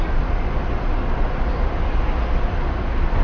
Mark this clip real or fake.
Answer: real